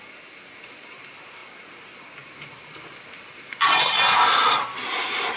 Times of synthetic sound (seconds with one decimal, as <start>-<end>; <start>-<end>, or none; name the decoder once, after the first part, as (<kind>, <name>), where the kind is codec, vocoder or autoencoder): none